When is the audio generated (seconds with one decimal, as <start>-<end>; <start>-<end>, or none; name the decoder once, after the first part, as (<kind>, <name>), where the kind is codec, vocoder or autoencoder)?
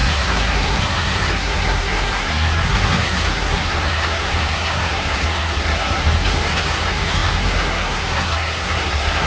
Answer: 0.0-9.3 (codec, SNAC)